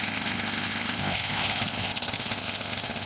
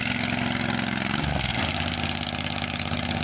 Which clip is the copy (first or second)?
first